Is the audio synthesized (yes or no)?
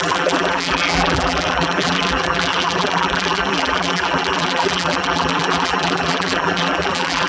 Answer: yes